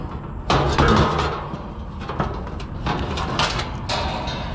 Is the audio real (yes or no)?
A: yes